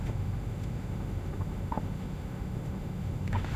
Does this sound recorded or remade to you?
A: remade